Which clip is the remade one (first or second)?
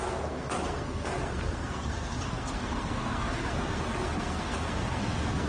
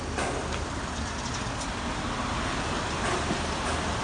first